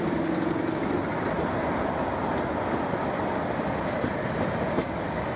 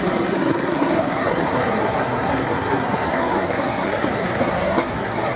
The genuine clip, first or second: first